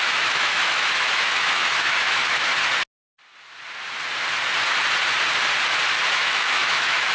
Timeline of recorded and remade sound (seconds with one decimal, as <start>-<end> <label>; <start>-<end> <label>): 0.0-2.5 remade; 2.5-6.1 recorded; 6.1-7.1 remade